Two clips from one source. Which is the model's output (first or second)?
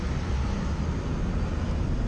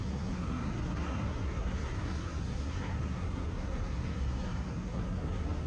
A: second